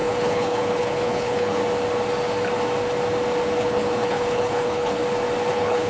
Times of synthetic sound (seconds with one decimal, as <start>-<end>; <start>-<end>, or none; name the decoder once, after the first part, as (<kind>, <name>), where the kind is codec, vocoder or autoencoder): 0.0-1.6 (codec, HILCodec); 3.6-5.0; 5.5-5.9